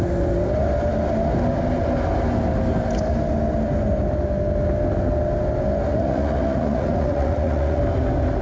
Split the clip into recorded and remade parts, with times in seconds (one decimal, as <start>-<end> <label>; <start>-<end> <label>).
0.0-5.9 recorded; 5.9-7.8 remade; 7.8-8.4 recorded